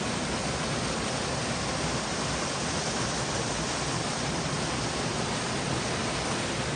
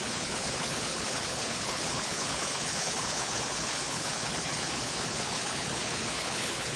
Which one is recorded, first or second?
first